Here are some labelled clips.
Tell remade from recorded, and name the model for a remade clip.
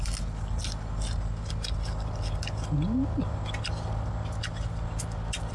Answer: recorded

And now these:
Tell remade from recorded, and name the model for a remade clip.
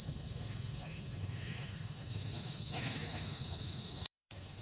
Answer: remade, autoencoder, DAC-VAE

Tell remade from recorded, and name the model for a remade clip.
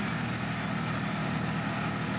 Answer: recorded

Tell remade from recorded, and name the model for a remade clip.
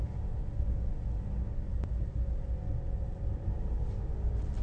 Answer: recorded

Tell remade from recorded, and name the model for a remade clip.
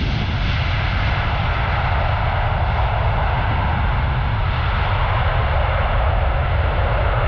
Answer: recorded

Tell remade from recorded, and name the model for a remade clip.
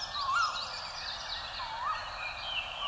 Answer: recorded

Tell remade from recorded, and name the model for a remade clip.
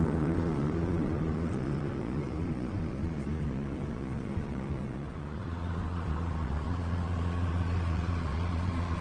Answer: remade, vocoder, Vocos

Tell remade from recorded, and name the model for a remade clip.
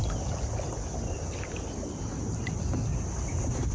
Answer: recorded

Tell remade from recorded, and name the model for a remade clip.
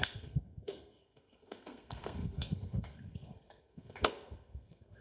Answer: remade, codec, SNAC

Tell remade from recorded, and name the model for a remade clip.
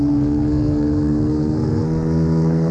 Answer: remade, codec, SNAC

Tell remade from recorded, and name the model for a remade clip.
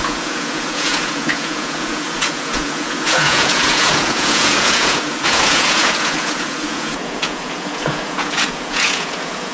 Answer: remade, vocoder, Vocos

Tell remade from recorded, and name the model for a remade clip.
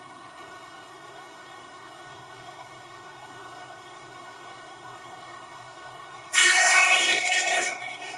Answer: remade, codec, SNAC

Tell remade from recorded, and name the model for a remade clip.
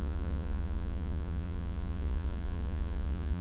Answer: remade, vocoder, Vocos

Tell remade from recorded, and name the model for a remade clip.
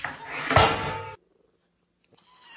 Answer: recorded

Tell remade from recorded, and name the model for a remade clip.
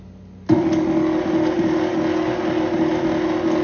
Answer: recorded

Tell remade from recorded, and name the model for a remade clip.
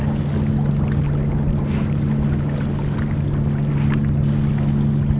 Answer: recorded